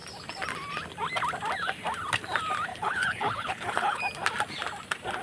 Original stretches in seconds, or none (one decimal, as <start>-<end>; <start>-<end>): 0.0-2.7; 4.0-5.2